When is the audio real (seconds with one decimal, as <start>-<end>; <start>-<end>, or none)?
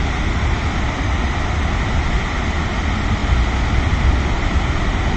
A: 0.0-5.2